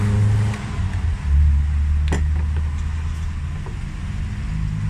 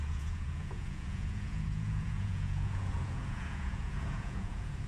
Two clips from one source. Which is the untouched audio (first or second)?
first